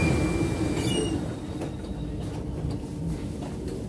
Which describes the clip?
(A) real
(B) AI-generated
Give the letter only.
A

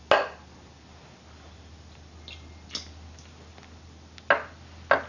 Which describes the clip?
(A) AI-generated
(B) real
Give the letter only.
B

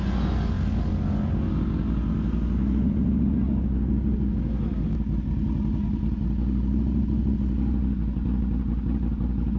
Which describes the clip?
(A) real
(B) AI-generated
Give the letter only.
A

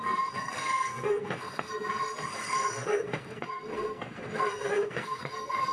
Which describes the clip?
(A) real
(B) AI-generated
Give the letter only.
B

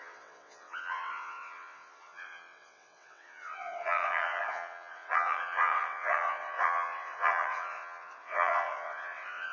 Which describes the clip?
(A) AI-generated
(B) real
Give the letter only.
A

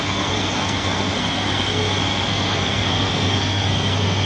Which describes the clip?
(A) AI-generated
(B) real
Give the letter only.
A